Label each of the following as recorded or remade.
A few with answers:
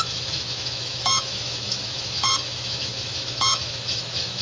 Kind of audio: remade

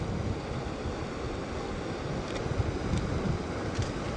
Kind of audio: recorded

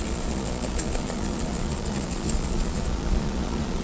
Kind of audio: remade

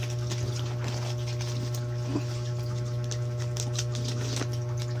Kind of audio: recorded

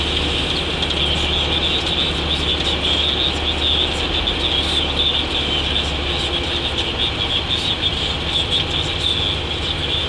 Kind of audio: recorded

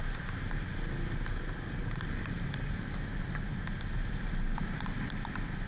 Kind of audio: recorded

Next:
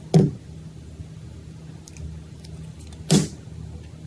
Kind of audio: recorded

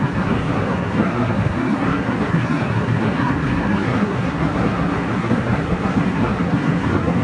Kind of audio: remade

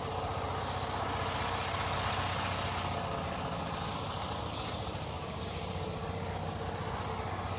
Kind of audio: recorded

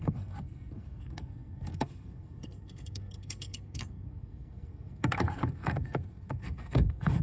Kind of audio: remade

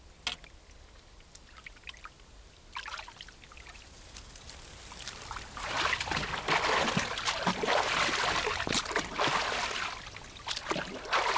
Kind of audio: recorded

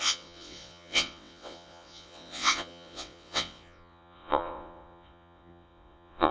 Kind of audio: remade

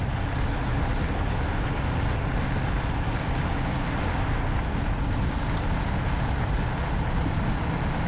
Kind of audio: recorded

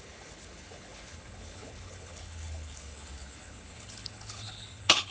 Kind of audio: remade